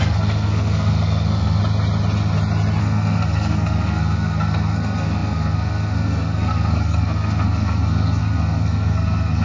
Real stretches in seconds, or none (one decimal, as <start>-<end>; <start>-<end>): 1.6-2.8